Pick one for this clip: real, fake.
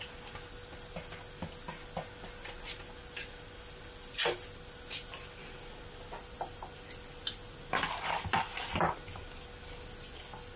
real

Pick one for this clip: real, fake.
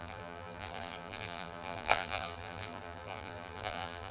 fake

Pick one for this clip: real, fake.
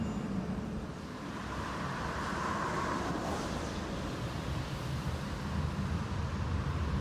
real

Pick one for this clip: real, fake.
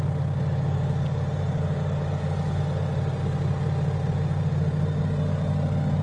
real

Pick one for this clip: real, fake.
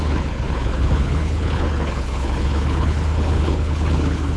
fake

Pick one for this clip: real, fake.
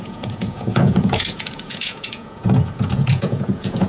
fake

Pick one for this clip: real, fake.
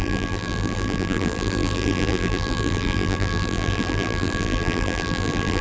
fake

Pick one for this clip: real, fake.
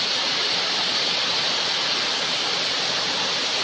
fake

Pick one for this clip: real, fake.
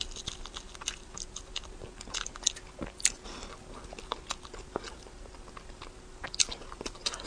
real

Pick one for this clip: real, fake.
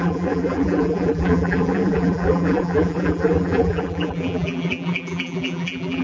fake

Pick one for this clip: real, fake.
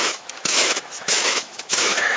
fake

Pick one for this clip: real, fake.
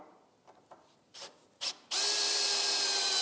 real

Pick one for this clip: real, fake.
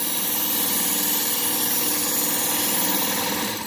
real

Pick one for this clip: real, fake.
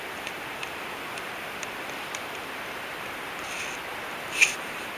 fake